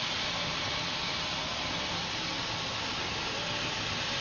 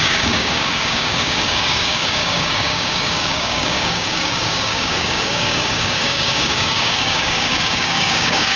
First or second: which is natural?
first